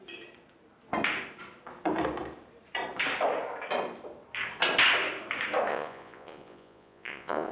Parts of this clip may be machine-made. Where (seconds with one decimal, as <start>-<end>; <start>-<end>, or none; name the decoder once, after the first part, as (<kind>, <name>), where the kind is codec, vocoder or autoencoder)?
5.7-7.5 (vocoder, Vocos)